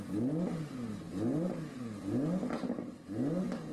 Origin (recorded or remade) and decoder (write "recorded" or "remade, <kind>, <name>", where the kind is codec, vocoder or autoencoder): recorded